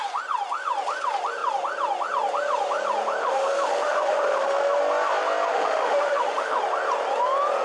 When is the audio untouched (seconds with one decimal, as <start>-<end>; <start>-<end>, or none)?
0.0-3.2; 4.8-5.5; 6.6-7.6